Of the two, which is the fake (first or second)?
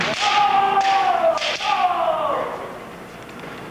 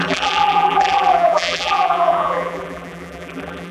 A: second